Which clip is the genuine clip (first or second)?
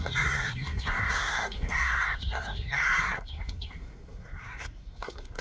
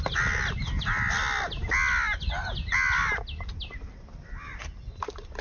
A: second